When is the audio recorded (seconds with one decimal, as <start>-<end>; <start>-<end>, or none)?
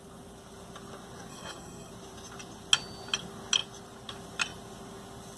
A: 0.0-1.3; 1.9-5.4